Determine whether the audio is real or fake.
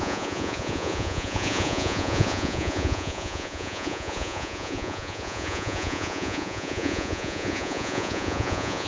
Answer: fake